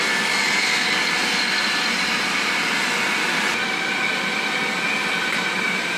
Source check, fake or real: real